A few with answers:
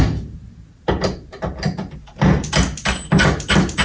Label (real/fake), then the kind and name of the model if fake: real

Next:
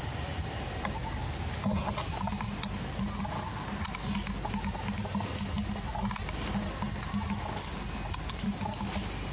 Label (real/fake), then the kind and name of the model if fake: real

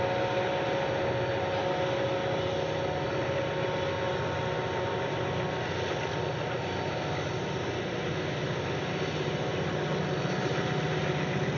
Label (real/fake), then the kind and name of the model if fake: real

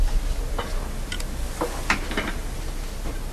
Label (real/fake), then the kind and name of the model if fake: real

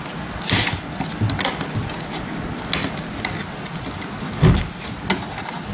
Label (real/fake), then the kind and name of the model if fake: real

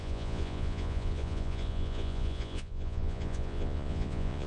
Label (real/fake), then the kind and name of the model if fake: fake, vocoder, Vocos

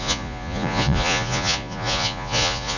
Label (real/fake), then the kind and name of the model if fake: fake, vocoder, Vocos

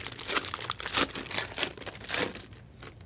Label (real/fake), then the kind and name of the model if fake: fake, vocoder, BigVGAN v2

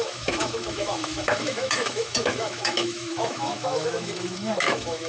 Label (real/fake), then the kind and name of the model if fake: fake, autoencoder, DAC-VAE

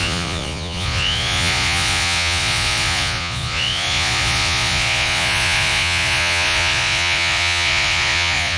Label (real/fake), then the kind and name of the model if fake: fake, vocoder, Vocos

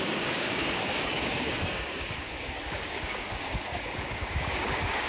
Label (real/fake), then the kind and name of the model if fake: fake, codec, DAC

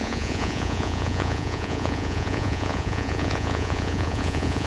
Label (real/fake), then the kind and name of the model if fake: fake, vocoder, Vocos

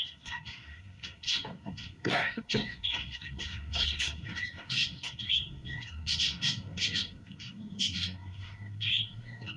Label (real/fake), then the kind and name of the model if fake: fake, codec, SNAC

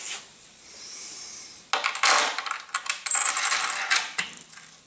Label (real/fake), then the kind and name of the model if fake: real